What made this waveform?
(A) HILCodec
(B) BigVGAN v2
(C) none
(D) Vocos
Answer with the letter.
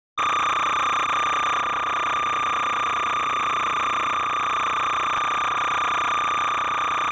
C